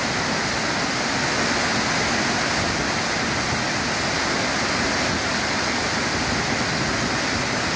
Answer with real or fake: real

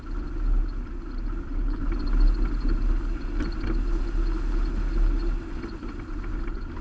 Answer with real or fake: real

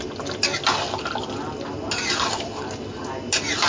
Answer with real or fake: real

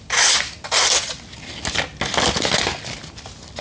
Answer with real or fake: real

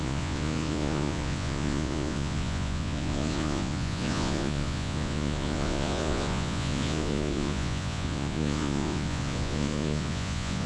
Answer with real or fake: fake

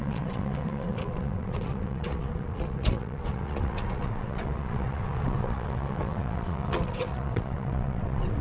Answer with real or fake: fake